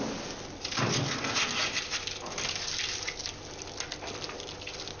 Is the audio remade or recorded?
recorded